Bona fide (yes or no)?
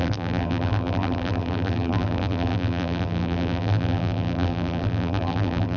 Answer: no